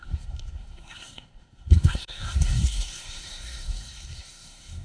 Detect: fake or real fake